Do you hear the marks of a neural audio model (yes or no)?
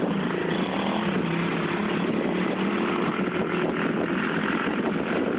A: no